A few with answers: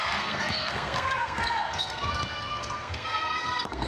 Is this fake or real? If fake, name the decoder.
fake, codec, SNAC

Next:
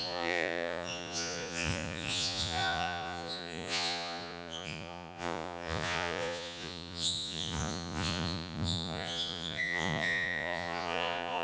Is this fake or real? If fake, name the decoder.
fake, vocoder, Vocos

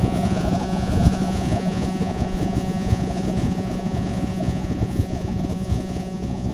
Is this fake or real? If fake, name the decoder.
fake, vocoder, Vocos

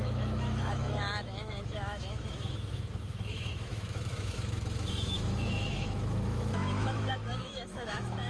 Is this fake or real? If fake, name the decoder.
fake, autoencoder, DAC-VAE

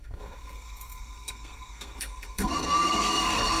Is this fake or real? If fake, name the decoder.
fake, codec, SNAC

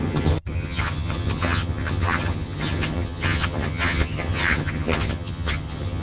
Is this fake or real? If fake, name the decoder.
fake, vocoder, HiFi-GAN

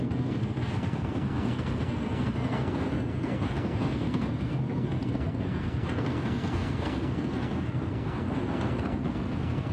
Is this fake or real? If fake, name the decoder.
fake, codec, SNAC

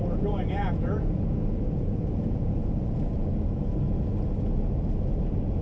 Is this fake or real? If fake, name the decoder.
fake, vocoder, Vocos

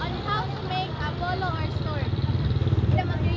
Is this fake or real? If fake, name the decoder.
real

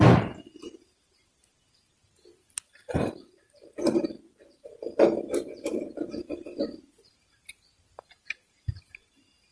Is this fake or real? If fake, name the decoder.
fake, vocoder, BigVGAN v2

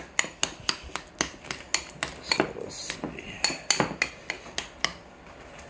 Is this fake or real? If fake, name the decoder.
real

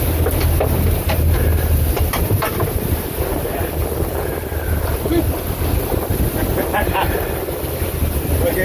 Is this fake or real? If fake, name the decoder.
real